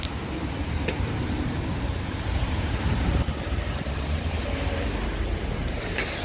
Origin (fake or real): fake